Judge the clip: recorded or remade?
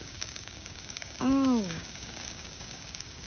remade